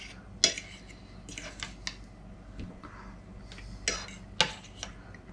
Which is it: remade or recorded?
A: recorded